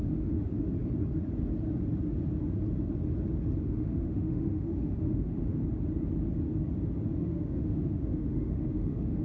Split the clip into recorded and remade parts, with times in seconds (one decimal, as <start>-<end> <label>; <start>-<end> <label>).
0.0-0.5 remade; 0.5-3.6 recorded; 3.6-5.6 remade; 5.6-7.2 recorded; 7.2-9.2 remade